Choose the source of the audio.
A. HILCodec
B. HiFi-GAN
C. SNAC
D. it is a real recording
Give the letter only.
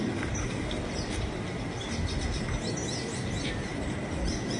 D